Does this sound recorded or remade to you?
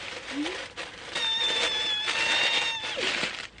recorded